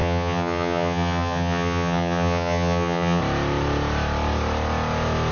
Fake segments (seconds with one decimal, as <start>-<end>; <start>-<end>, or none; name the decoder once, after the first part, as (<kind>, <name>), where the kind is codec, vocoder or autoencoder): 0.0-3.2 (vocoder, HiFi-GAN)